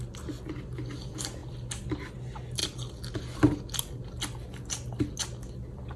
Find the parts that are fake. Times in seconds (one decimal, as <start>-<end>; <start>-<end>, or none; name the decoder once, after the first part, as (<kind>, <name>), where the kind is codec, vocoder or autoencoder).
none